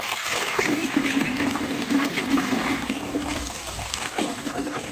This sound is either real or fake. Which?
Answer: fake